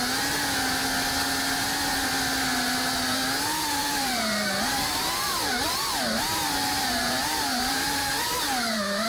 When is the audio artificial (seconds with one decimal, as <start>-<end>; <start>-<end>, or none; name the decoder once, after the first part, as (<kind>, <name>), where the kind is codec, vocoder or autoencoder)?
3.8-8.1 (vocoder, BigVGAN v2)